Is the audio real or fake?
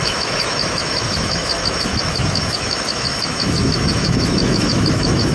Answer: fake